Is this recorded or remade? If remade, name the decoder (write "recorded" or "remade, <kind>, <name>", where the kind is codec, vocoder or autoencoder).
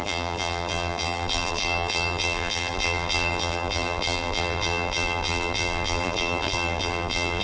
remade, vocoder, BigVGAN v2